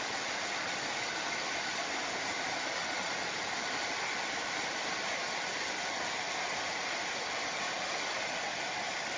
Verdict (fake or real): real